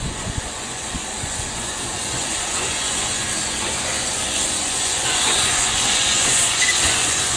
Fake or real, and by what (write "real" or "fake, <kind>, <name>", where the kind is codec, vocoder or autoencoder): fake, vocoder, Vocos